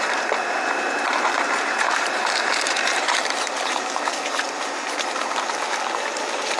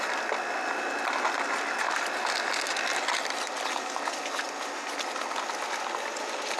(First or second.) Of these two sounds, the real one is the second